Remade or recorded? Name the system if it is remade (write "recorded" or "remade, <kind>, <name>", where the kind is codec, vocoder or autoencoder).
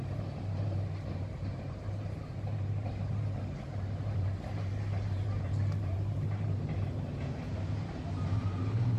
remade, vocoder, BigVGAN v2